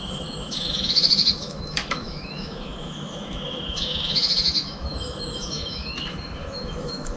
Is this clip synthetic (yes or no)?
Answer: yes